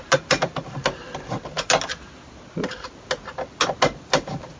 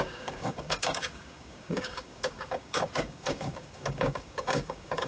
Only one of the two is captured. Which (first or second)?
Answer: first